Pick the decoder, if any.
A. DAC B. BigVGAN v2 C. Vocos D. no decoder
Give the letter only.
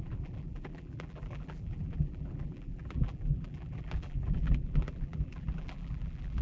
B